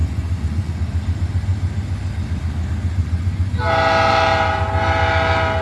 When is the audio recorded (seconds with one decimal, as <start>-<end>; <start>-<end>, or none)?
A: 0.7-3.0; 3.6-5.6